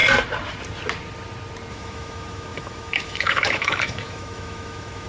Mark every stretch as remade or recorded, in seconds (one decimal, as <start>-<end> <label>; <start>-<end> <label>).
0.0-1.7 recorded; 1.7-5.1 remade